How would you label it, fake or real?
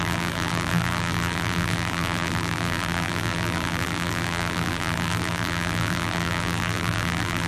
fake